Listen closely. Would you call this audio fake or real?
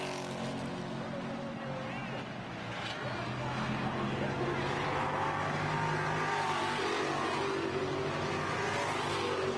real